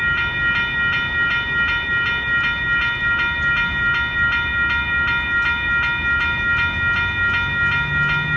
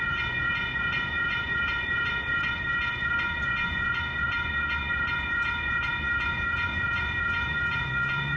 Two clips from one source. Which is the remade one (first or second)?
second